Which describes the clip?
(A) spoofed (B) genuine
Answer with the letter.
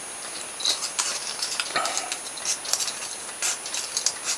B